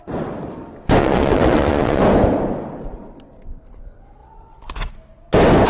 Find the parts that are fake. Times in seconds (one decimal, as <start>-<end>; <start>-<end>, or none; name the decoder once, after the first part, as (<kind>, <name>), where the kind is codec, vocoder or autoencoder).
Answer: 1.0-2.0 (vocoder, Vocos); 4.2-4.9